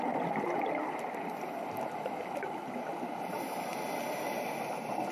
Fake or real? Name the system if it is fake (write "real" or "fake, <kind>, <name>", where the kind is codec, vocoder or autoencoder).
real